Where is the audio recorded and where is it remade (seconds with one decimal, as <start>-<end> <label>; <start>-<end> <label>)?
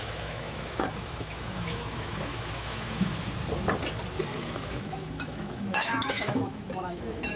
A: 0.0-3.1 remade; 3.1-4.4 recorded; 4.4-7.4 remade